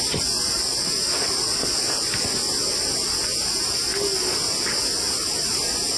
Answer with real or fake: real